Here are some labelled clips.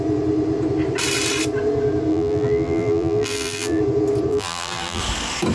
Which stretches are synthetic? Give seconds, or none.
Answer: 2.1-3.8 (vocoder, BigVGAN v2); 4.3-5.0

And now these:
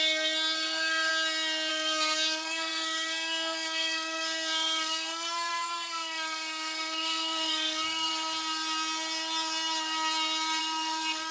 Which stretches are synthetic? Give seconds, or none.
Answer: 0.0-1.1 (codec, SNAC); 1.7-8.1; 10.6-11.3

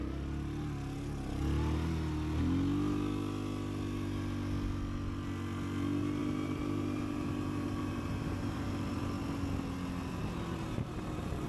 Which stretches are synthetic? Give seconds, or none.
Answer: 6.2-9.0 (vocoder, BigVGAN v2)

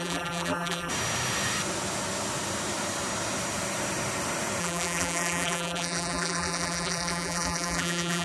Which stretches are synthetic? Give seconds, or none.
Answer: 0.0-0.9 (vocoder, BigVGAN v2); 4.6-8.2